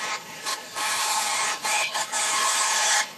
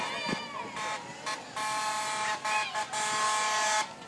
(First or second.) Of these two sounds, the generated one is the first